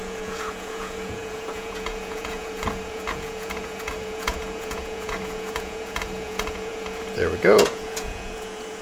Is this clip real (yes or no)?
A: no